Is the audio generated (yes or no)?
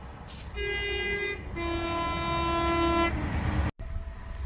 no